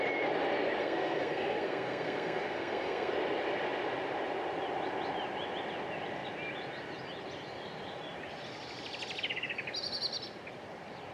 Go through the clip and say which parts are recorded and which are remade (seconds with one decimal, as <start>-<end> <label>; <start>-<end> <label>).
0.0-0.8 recorded; 0.8-3.1 remade; 3.1-11.1 recorded